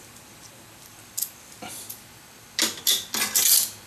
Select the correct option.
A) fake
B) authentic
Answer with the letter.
A